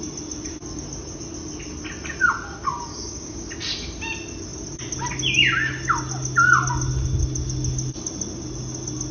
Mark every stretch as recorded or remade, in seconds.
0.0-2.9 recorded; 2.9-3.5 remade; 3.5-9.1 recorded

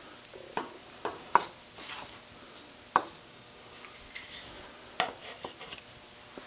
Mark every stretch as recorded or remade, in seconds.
0.0-3.2 recorded; 3.2-3.8 remade; 3.8-6.5 recorded

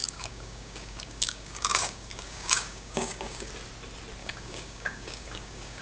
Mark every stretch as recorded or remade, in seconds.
0.0-3.5 remade; 3.5-4.2 recorded; 4.2-5.8 remade

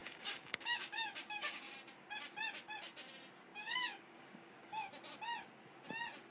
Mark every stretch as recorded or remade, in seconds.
0.0-1.7 remade; 1.7-3.5 recorded; 3.5-4.9 remade; 4.9-6.3 recorded

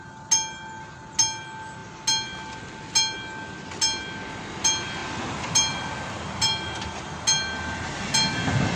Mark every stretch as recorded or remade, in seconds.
0.0-8.8 recorded

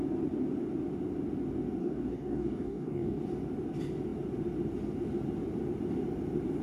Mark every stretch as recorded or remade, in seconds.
0.0-1.8 recorded; 1.8-3.2 remade; 3.2-6.6 recorded